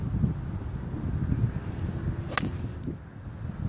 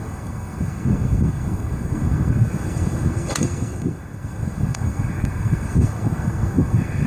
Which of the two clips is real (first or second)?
first